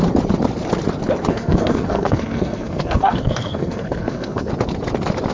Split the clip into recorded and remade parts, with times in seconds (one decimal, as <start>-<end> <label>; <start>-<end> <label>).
0.0-1.3 recorded; 1.3-4.5 remade; 4.5-5.3 recorded